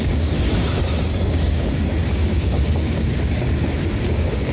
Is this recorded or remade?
remade